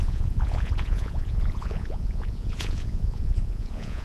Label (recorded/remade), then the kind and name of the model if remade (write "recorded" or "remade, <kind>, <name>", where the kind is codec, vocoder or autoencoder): remade, vocoder, Vocos